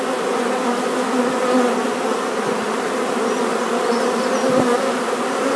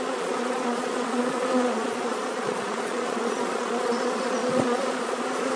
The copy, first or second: second